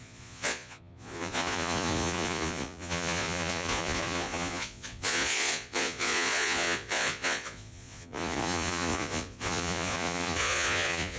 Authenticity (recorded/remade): remade